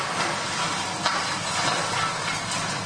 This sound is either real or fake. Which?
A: real